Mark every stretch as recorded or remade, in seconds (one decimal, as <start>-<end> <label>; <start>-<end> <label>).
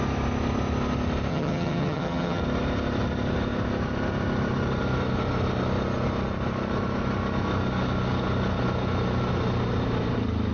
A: 0.0-1.3 recorded; 1.3-2.4 remade; 2.4-10.5 recorded